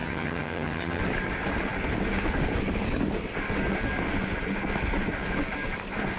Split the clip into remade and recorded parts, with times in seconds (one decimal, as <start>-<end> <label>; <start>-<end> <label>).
0.0-1.0 remade; 1.0-6.2 recorded